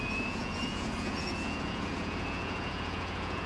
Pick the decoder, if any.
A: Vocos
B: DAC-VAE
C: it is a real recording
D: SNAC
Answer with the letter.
A